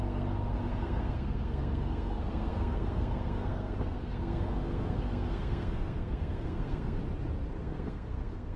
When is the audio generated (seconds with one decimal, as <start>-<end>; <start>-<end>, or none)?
0.0-7.0; 7.6-8.6